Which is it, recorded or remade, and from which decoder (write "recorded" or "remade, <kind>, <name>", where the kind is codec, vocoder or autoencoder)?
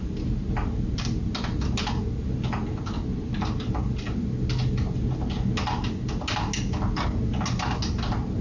recorded